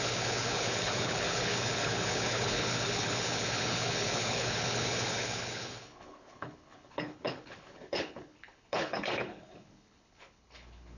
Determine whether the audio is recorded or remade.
remade